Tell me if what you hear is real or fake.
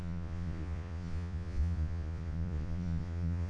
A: fake